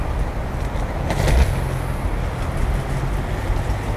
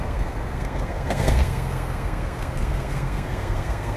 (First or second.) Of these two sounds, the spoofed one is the second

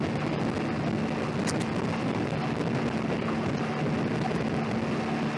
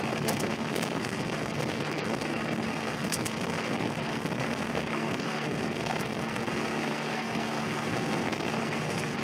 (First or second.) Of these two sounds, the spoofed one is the second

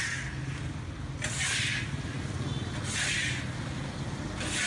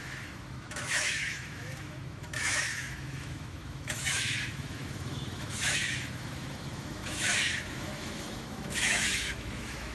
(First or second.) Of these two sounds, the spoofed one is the second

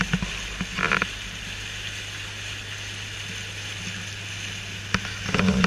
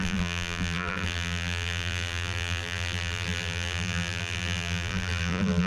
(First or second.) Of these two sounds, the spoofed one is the second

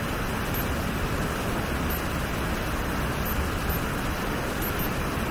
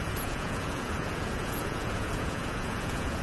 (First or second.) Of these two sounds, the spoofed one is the second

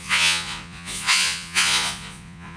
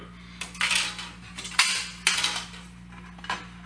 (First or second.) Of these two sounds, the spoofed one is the first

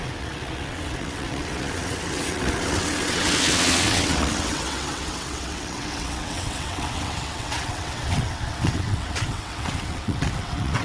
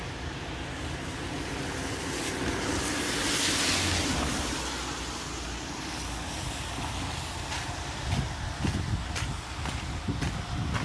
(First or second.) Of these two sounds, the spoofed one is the first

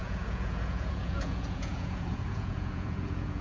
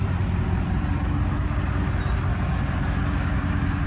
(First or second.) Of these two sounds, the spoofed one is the first